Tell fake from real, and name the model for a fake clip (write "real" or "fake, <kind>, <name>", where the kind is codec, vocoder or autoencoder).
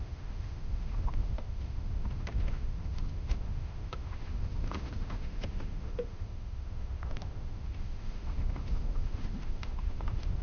fake, autoencoder, DAC-VAE